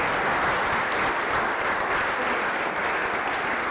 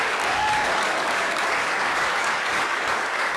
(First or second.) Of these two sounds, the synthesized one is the second